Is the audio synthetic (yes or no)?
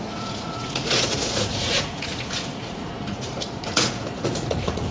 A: yes